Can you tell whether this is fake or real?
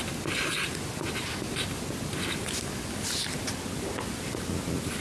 real